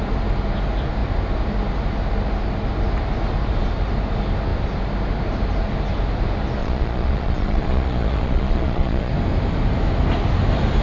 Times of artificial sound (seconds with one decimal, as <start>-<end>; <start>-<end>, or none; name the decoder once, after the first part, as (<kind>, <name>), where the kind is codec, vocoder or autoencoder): 6.6-9.1 (vocoder, Vocos)